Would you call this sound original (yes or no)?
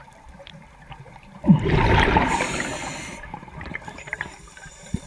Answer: no